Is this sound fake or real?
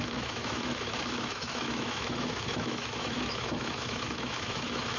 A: fake